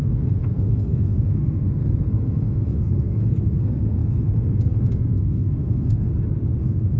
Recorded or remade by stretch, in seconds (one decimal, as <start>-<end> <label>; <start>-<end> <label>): 0.0-6.1 remade; 6.1-6.6 recorded; 6.6-7.0 remade